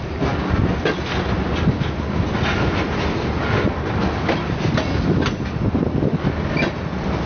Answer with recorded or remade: recorded